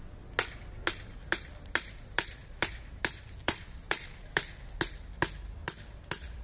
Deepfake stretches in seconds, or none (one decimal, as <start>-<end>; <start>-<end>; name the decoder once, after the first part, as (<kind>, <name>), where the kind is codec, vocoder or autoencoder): 1.2-4.7 (vocoder, BigVGAN v2); 5.6-6.4